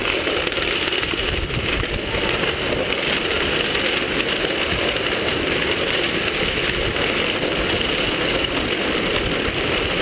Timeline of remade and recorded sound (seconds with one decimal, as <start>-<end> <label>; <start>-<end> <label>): 0.0-10.0 recorded